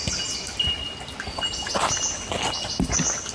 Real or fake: real